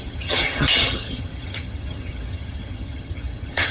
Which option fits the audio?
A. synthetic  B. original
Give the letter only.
A